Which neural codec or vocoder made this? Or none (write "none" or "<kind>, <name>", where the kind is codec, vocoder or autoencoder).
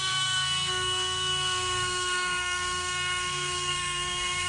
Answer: codec, SNAC